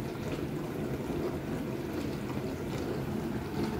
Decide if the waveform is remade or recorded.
recorded